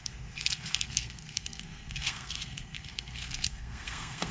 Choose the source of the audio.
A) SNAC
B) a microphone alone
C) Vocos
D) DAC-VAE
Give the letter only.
A